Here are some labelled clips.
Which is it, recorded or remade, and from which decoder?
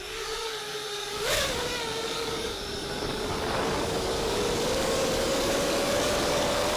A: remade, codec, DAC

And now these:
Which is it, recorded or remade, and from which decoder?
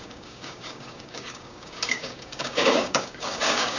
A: remade, codec, DAC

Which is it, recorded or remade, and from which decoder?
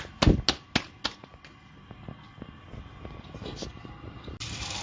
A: recorded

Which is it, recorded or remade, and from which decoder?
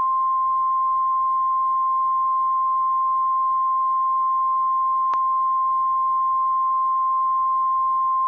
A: recorded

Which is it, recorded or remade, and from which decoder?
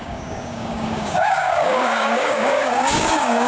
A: remade, codec, DAC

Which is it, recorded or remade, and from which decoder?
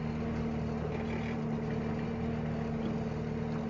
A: recorded